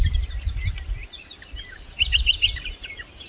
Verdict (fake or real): fake